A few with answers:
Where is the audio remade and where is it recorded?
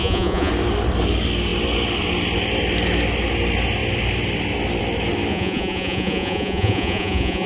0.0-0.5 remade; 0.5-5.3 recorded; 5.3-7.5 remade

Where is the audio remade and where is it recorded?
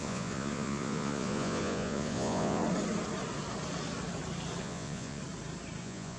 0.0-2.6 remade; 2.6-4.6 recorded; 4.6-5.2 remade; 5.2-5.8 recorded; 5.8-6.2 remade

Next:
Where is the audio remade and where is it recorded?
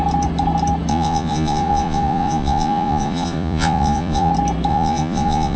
0.0-0.9 recorded; 0.9-4.3 remade; 4.3-4.7 recorded; 4.7-5.6 remade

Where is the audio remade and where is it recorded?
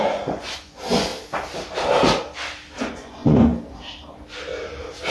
0.0-1.1 remade; 1.1-2.8 recorded; 2.8-3.5 remade; 3.5-5.1 recorded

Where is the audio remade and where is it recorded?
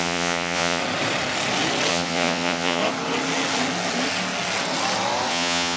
0.0-0.8 remade; 0.8-1.9 recorded; 1.9-2.8 remade; 2.8-5.3 recorded; 5.3-5.8 remade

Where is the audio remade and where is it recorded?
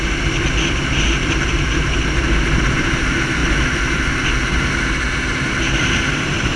0.0-6.6 recorded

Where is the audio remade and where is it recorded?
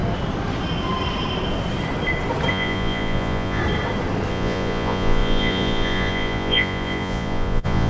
0.0-2.5 recorded; 2.5-3.6 remade; 3.6-4.3 recorded; 4.3-7.9 remade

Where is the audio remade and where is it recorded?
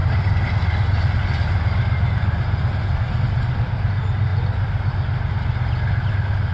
0.0-6.5 recorded